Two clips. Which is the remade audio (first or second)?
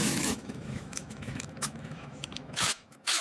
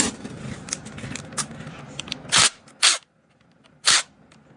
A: first